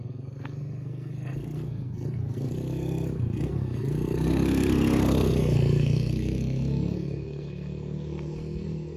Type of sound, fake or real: fake